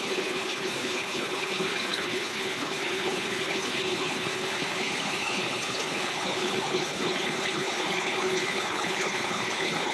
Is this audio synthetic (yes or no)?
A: yes